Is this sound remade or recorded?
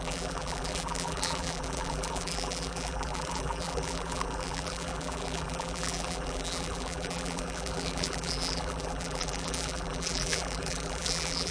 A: remade